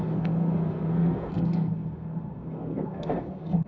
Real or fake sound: fake